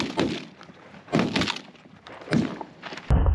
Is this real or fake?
real